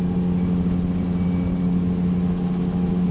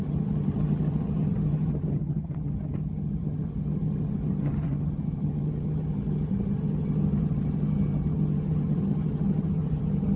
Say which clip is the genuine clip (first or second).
first